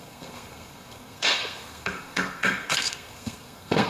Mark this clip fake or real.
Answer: fake